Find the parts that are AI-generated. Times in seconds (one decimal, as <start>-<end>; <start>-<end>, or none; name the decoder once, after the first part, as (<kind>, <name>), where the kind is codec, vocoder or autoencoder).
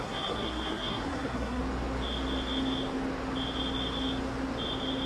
0.0-1.6 (codec, SNAC)